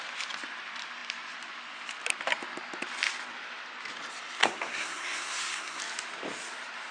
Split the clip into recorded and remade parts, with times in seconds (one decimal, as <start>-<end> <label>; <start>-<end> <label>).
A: 0.0-4.4 recorded; 4.4-5.8 remade; 5.8-6.9 recorded